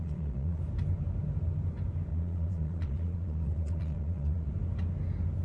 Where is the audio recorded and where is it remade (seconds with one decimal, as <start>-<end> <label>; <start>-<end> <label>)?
0.0-0.6 remade; 0.6-2.1 recorded; 2.1-4.5 remade; 4.5-5.4 recorded